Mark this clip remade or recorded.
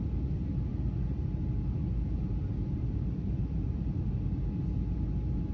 recorded